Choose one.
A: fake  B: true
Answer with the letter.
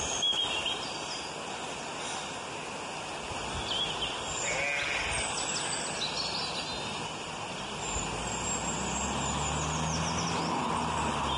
B